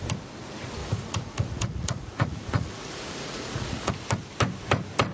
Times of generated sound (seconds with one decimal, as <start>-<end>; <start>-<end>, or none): 0.8-3.9